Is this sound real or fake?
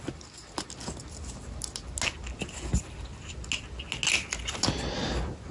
real